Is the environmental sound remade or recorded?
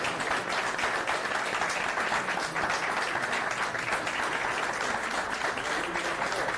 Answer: recorded